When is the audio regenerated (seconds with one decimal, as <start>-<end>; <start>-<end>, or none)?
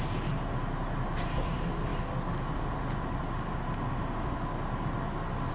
none